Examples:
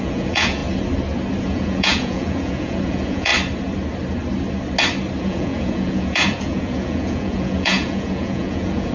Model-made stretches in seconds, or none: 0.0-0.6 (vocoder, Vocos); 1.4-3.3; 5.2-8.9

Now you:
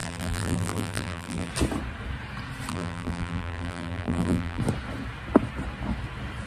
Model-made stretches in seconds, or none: 0.0-1.5 (vocoder, BigVGAN v2); 2.7-4.6

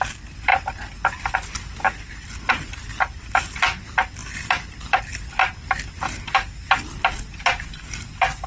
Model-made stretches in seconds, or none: 0.5-2.7 (vocoder, BigVGAN v2)

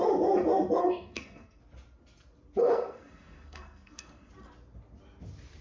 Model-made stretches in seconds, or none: 0.8-1.6 (codec, SNAC); 2.6-4.3

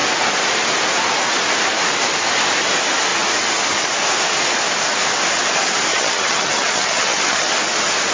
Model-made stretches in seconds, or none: 5.9-7.5 (vocoder, HiFi-GAN)

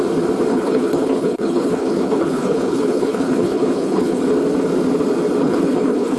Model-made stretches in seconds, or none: 0.5-4.2 (codec, HILCodec); 5.4-6.2